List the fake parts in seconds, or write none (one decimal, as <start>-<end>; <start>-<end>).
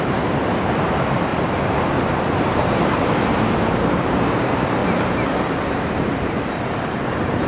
0.0-1.3; 2.0-4.8; 5.4-7.5